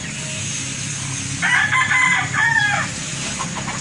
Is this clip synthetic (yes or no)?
yes